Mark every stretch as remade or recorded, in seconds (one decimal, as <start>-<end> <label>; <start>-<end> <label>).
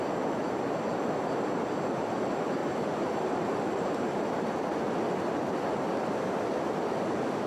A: 0.0-2.6 recorded; 2.6-4.6 remade; 4.6-7.5 recorded